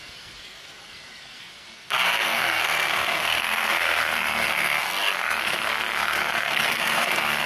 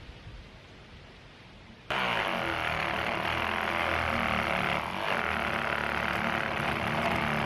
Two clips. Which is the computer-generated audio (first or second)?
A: first